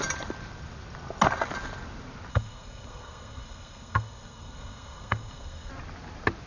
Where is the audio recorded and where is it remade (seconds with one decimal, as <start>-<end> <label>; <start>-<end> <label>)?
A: 0.0-2.3 recorded; 2.3-5.7 remade; 5.7-6.5 recorded